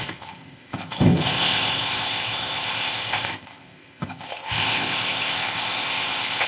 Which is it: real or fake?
fake